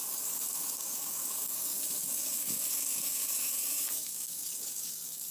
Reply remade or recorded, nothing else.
remade